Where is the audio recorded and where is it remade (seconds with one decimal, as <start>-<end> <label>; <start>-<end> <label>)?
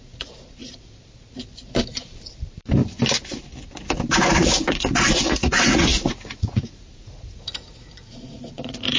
0.0-0.6 remade; 0.6-4.4 recorded; 4.4-9.0 remade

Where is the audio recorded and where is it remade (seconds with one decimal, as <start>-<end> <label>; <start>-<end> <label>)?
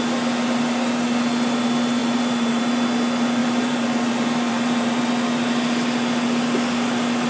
0.0-2.0 recorded; 2.0-2.6 remade; 2.6-3.4 recorded; 3.4-4.1 remade; 4.1-4.5 recorded; 4.5-5.1 remade; 5.1-7.3 recorded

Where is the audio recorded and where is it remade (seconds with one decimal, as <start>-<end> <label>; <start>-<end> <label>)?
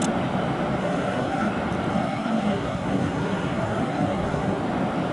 0.0-0.8 recorded; 0.8-1.5 remade; 1.5-1.9 recorded; 1.9-4.6 remade; 4.6-5.1 recorded